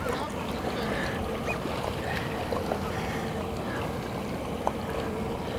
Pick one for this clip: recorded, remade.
recorded